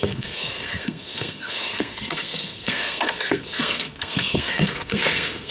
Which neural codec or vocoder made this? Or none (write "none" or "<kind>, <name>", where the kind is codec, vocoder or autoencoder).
codec, SNAC